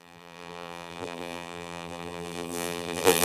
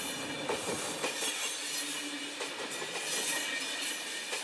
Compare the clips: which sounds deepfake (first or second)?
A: first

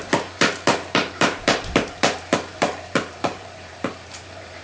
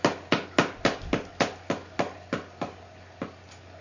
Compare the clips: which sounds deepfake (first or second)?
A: first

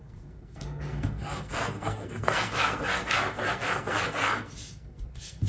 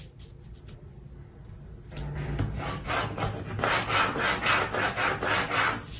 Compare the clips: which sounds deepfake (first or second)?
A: first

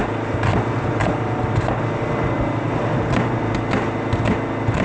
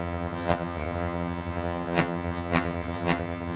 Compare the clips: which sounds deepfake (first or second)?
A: second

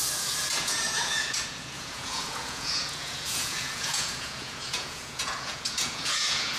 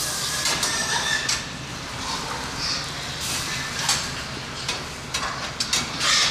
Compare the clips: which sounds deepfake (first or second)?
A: first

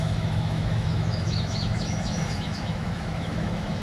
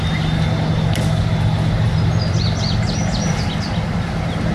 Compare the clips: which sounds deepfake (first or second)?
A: first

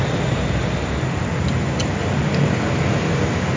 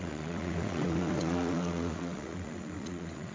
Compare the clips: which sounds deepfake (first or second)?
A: second